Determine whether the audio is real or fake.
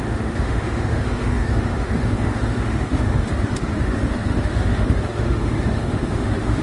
fake